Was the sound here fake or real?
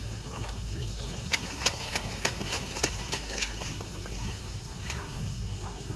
fake